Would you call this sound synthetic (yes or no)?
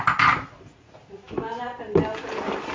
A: no